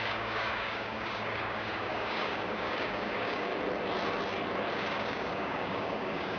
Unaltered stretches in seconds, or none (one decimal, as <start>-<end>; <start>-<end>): 3.5-4.7